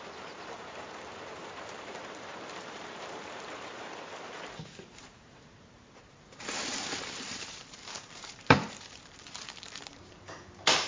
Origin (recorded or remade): remade